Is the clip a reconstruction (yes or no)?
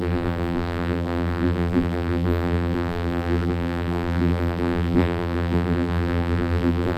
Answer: yes